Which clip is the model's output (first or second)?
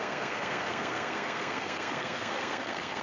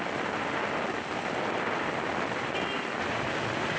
first